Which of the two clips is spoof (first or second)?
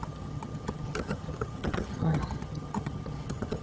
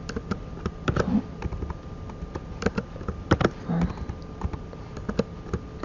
first